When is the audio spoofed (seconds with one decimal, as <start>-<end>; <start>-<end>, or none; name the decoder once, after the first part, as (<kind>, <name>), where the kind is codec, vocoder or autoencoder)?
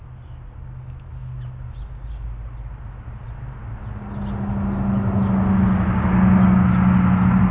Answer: none